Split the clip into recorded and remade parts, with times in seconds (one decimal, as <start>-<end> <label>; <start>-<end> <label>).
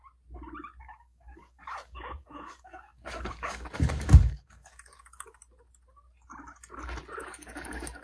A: 0.0-0.8 recorded; 0.8-5.4 remade; 5.4-7.2 recorded; 7.2-8.0 remade